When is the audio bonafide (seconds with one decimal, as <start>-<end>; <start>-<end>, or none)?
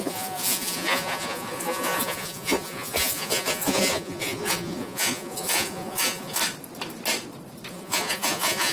6.4-7.7